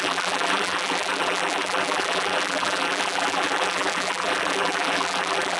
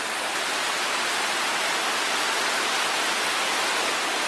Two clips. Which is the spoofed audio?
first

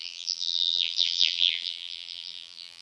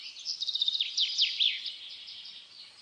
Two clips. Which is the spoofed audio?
first